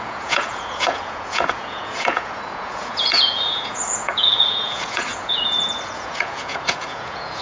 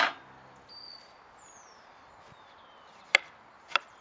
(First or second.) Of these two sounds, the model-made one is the first